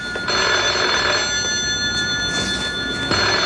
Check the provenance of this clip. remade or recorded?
recorded